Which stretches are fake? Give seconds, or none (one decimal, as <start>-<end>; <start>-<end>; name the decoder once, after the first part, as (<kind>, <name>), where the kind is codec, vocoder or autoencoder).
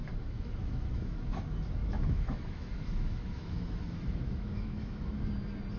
0.0-1.4 (autoencoder, DAC-VAE); 1.8-5.3